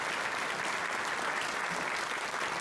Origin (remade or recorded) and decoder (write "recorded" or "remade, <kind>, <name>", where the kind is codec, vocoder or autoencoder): recorded